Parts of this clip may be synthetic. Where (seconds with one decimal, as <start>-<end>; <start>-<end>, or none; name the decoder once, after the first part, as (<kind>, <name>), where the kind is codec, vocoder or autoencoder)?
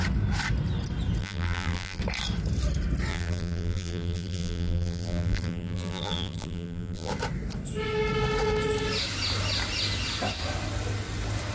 1.2-2.0 (vocoder, BigVGAN v2); 3.1-7.1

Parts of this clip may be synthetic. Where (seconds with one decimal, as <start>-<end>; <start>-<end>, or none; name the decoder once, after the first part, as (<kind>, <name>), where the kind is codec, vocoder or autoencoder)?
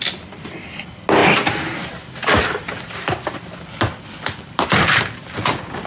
1.2-4.7 (vocoder, BigVGAN v2)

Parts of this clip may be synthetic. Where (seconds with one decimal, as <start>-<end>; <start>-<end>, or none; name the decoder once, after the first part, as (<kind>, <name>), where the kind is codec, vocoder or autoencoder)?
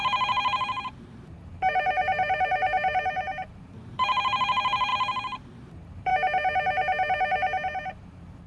0.0-4.9 (vocoder, BigVGAN v2); 5.5-6.1; 8.1-8.5